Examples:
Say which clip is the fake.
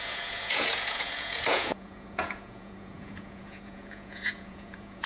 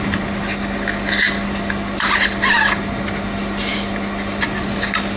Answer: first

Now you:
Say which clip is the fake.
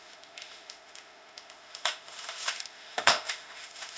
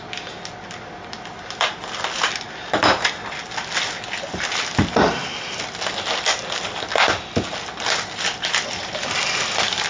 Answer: first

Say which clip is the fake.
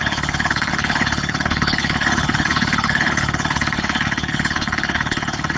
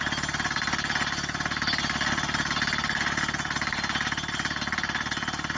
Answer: first